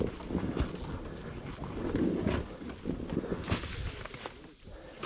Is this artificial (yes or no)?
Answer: no